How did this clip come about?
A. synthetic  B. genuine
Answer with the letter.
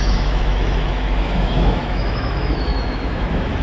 A